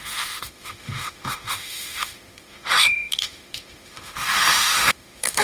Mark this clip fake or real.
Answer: fake